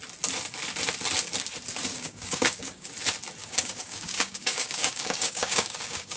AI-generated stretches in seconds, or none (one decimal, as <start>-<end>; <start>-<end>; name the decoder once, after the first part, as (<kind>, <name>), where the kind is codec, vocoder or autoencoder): 1.9-2.9 (codec, DAC); 3.4-6.2